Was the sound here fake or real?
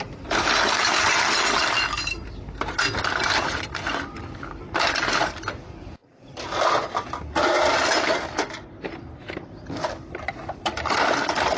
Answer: real